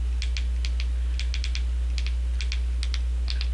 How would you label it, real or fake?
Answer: real